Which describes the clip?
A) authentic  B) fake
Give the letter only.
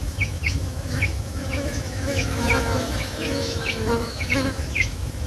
B